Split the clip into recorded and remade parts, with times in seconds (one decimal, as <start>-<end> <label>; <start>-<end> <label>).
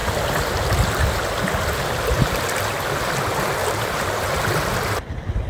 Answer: 0.0-3.6 recorded; 3.6-4.2 remade; 4.2-5.5 recorded